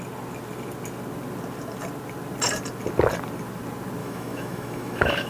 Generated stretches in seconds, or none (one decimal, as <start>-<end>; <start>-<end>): 4.0-5.3